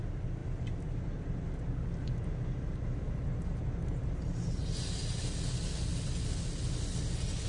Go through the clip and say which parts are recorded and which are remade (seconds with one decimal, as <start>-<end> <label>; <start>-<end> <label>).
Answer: 0.0-7.5 recorded